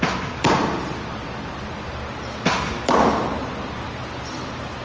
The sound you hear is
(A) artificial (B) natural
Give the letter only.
B